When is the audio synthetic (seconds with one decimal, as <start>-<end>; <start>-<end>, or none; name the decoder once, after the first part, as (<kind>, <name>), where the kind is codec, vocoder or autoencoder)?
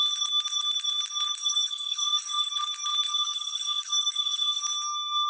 1.4-2.5 (codec, SNAC); 3.1-4.6